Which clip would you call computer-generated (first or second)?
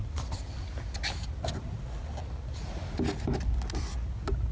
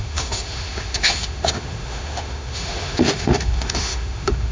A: second